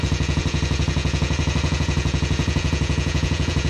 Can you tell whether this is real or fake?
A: fake